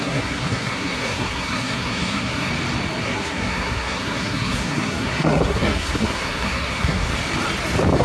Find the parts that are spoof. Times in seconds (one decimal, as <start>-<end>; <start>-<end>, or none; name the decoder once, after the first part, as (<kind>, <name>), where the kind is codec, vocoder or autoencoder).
0.0-2.5 (codec, SNAC); 3.0-7.1